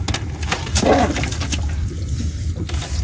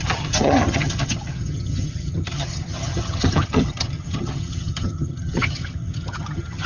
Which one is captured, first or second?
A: first